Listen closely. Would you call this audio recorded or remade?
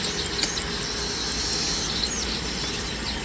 recorded